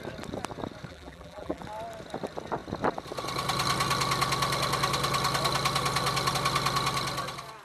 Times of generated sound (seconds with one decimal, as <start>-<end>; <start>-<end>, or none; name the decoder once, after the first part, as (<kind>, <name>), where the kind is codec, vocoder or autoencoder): 0.9-1.6 (vocoder, BigVGAN v2)